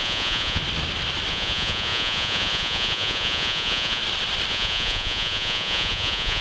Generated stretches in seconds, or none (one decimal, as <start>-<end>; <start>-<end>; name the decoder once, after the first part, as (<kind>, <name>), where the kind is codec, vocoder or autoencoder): 0.0-0.6 (vocoder, Vocos); 1.3-4.0; 4.5-6.4